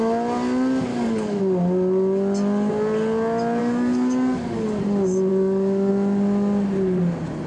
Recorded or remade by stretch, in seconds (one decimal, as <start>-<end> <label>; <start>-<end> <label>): 0.0-0.9 recorded; 0.9-1.4 remade; 1.4-3.6 recorded; 3.6-4.8 remade; 4.8-5.3 recorded; 5.3-5.9 remade; 5.9-7.5 recorded